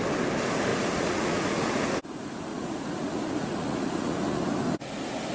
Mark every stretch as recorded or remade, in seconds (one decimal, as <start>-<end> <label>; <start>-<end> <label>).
0.0-0.7 recorded; 0.7-1.7 remade; 1.7-2.5 recorded; 2.5-4.4 remade; 4.4-5.3 recorded